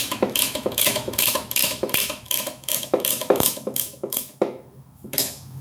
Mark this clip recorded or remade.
remade